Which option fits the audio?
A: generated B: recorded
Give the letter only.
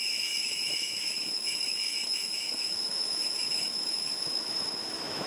A